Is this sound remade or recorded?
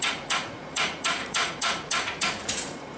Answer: remade